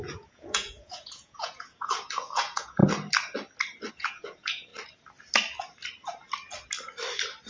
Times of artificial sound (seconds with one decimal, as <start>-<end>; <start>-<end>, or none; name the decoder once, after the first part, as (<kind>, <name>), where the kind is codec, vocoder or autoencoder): 0.0-2.8 (vocoder, Vocos); 3.9-4.7